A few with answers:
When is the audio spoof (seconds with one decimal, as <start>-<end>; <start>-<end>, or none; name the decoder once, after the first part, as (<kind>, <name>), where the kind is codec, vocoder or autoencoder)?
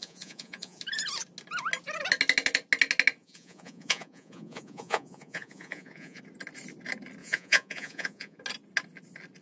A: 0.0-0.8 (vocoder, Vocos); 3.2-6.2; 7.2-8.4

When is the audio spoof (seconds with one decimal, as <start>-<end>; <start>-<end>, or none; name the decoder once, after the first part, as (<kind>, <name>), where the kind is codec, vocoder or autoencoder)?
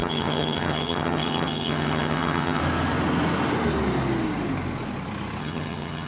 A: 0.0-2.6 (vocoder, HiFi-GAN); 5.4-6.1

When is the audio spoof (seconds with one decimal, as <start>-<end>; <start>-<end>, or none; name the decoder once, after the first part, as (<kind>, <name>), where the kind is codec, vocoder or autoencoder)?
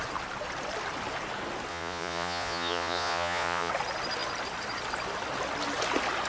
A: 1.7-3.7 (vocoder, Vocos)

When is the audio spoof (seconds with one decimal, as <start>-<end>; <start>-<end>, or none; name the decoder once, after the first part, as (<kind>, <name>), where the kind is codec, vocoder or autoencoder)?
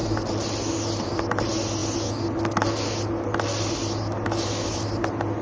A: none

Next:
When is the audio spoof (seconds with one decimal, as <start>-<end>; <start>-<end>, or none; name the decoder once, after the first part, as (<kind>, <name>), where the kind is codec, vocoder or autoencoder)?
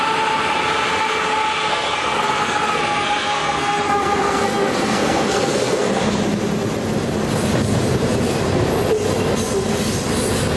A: 1.7-5.9 (codec, SNAC)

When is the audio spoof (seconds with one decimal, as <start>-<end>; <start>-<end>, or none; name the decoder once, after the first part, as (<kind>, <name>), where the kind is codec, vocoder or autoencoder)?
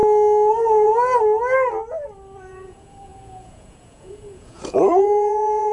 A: 0.5-0.9 (vocoder, Vocos); 2.5-5.7